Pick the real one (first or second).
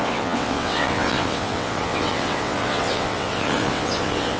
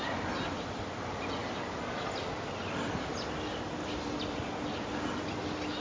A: second